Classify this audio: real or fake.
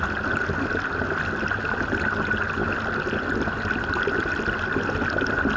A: real